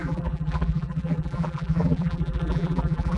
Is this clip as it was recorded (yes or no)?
no